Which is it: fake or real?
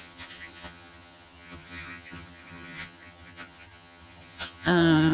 fake